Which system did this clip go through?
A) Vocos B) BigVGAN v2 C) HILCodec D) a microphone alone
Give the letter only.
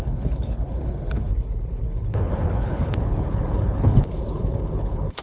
C